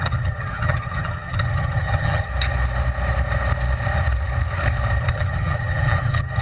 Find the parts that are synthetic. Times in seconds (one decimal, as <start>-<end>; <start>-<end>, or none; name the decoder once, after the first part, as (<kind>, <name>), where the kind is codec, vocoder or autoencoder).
0.0-2.3 (vocoder, HiFi-GAN); 5.0-6.4